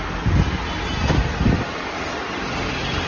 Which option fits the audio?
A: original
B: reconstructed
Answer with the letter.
A